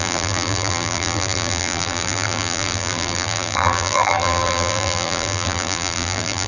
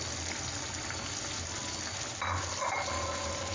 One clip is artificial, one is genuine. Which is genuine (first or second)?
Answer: second